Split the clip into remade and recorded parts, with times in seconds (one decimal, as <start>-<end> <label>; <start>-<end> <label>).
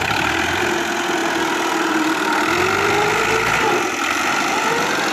0.0-5.1 remade